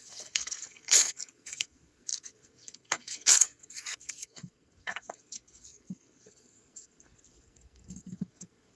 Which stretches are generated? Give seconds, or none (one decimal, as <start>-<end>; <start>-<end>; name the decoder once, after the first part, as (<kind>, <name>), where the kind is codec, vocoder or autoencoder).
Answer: 0.0-8.8 (codec, SNAC)